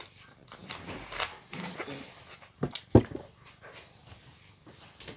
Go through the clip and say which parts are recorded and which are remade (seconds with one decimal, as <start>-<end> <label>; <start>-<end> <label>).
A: 0.0-5.2 recorded